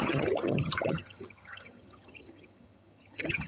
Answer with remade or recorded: remade